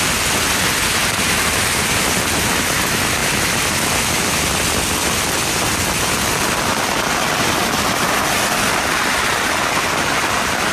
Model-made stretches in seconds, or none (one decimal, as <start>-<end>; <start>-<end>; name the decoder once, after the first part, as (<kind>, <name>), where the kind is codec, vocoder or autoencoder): none